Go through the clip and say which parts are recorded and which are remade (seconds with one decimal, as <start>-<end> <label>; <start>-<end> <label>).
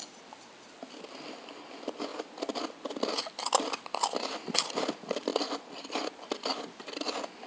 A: 0.0-7.5 recorded